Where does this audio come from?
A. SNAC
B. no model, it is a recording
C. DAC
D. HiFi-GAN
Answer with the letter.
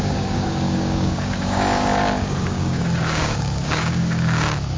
C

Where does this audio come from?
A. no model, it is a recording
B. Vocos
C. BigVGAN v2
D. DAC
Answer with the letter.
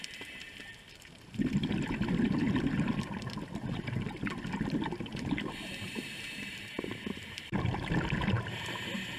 A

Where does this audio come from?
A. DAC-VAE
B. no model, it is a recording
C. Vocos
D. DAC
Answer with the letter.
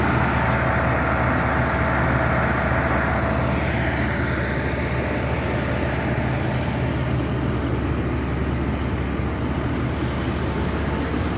B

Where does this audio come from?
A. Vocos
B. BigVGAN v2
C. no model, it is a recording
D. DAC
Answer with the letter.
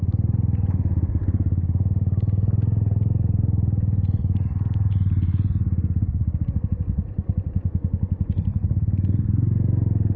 C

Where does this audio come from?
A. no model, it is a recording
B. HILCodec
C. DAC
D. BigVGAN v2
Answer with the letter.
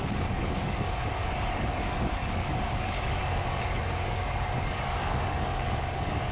C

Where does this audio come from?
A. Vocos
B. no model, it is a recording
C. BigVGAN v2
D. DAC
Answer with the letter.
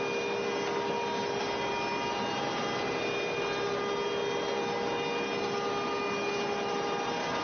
B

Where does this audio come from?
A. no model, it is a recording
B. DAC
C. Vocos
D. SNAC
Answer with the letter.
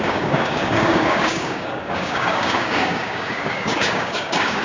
B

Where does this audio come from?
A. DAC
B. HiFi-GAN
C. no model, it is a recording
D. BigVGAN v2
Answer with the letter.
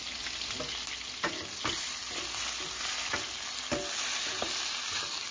C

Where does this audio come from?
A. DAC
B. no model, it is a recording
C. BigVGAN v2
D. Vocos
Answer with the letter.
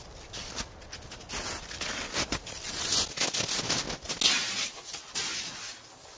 B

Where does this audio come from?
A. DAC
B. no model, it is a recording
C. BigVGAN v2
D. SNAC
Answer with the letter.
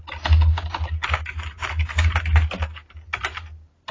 B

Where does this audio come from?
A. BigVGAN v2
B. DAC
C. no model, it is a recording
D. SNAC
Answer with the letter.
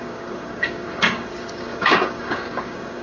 B